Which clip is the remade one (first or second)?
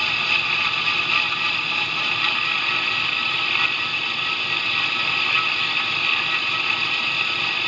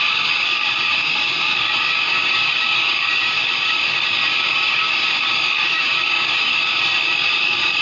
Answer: second